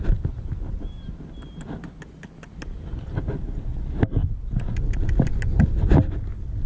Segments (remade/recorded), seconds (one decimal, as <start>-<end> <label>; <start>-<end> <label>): 0.0-6.7 recorded